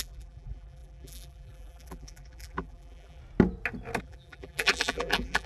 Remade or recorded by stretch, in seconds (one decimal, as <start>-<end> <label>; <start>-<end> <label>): 0.0-3.2 remade; 3.2-4.0 recorded; 4.0-5.5 remade